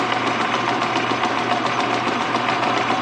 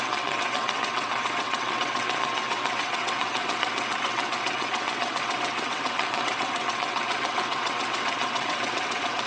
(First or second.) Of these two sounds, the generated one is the second